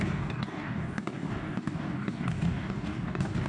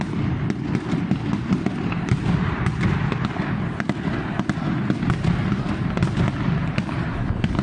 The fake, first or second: first